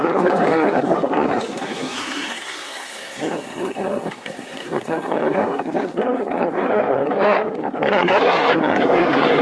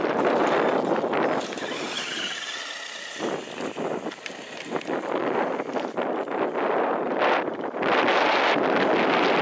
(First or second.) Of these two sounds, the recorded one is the second